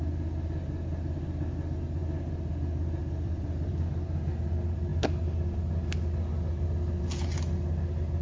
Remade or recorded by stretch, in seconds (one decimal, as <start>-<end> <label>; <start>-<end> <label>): 0.0-3.0 recorded; 3.0-3.9 remade; 3.9-8.2 recorded